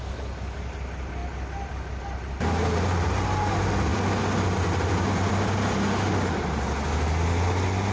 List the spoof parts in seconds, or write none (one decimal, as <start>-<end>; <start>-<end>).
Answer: none